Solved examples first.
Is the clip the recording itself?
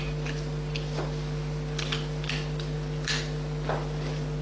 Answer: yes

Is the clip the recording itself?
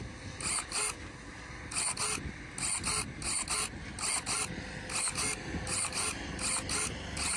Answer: yes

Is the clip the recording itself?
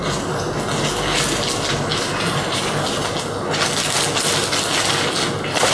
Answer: yes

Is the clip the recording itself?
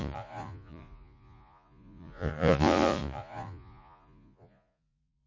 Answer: no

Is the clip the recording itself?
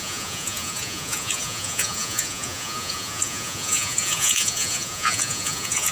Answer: no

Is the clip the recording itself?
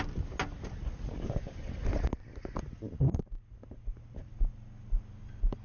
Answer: yes